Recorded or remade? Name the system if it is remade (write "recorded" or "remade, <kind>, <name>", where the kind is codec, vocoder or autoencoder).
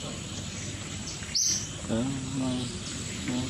recorded